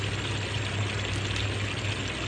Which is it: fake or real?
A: real